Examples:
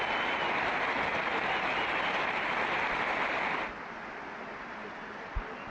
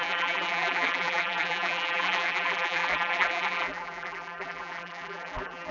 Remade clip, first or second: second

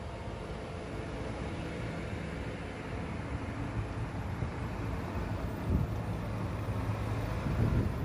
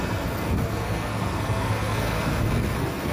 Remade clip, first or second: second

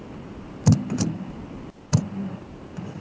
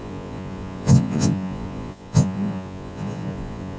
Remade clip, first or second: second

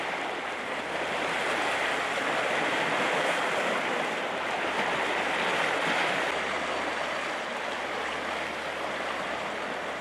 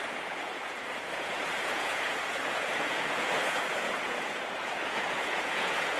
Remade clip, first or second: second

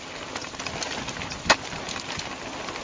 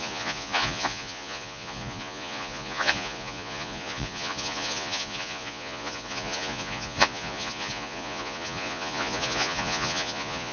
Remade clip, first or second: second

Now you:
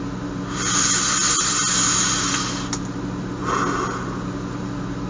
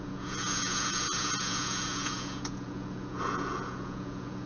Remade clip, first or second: second